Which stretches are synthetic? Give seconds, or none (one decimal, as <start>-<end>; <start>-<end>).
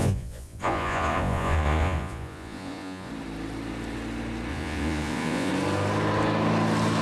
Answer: 0.0-3.1; 4.5-5.5